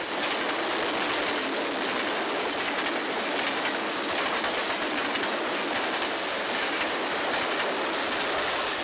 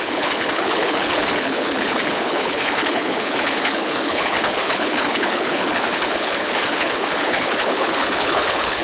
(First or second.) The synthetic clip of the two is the second